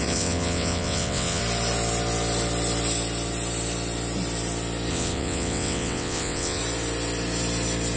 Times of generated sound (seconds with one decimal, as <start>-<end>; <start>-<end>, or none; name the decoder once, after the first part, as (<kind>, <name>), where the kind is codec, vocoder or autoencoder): 0.0-1.4 (vocoder, WaveNeXt); 4.9-6.6